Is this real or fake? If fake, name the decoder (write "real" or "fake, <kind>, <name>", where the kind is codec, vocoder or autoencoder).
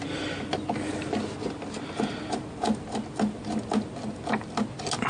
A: real